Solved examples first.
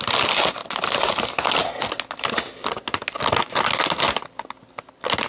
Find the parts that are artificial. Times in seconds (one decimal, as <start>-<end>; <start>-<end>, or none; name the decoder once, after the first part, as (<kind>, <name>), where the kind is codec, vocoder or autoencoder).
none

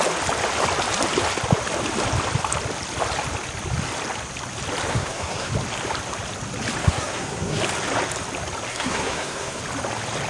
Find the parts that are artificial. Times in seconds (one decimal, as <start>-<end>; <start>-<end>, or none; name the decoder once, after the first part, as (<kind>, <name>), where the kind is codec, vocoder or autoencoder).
4.9-5.5 (codec, SNAC); 6.8-7.6; 8.7-9.6

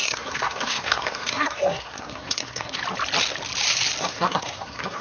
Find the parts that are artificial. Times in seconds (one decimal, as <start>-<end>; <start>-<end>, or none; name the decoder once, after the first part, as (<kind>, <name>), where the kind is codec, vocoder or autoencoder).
0.0-2.8 (codec, SNAC); 4.0-5.0